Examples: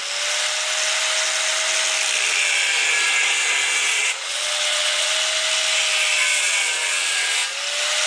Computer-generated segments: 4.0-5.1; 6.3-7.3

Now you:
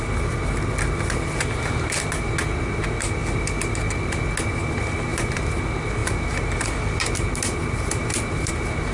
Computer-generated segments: 5.1-5.6; 6.0-8.5

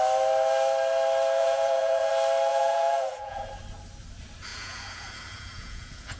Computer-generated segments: 1.4-2.1; 2.5-3.5; 4.5-6.2

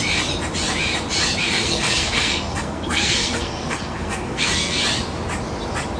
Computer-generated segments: 1.4-4.8